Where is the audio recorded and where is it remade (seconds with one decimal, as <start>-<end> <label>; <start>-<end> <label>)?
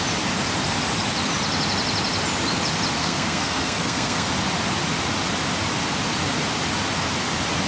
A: 0.0-3.0 recorded; 3.0-4.3 remade; 4.3-7.7 recorded